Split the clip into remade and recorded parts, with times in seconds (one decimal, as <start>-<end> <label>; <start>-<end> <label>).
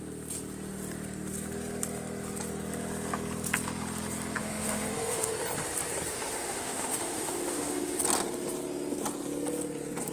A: 0.0-4.4 recorded; 4.4-5.3 remade; 5.3-6.1 recorded; 6.1-8.0 remade; 8.0-10.1 recorded